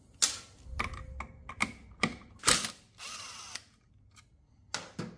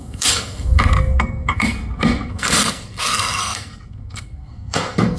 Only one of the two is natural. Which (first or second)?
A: first